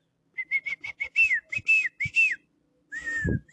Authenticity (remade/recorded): recorded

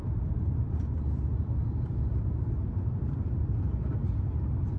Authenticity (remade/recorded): recorded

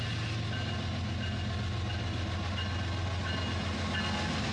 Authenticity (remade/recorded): recorded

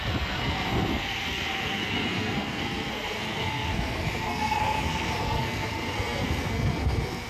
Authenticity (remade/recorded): remade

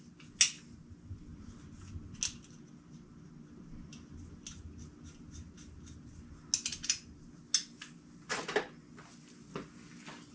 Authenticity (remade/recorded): recorded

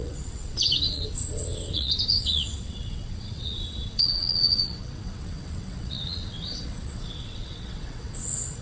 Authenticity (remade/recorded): remade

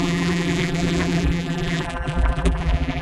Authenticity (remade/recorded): remade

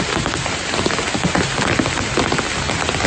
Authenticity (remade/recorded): recorded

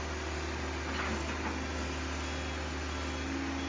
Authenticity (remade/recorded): recorded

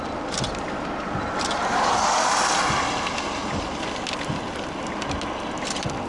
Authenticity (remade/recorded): recorded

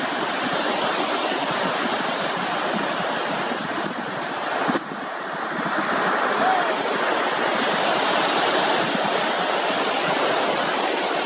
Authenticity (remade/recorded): remade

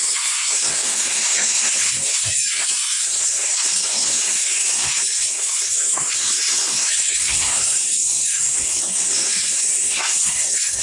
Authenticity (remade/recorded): remade